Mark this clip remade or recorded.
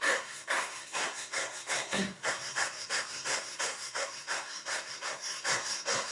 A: remade